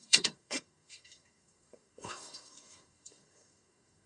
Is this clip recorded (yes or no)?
no